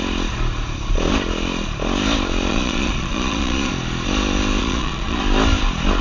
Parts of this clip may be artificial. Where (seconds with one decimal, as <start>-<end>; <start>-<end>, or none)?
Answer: 2.5-3.7; 4.6-5.2